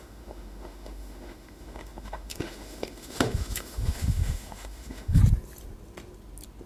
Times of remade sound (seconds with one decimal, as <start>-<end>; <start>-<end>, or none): 0.0-5.2